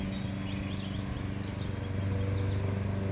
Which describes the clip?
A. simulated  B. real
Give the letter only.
B